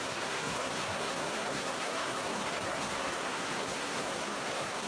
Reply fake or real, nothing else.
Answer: fake